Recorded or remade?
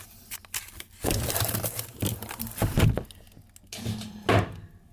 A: recorded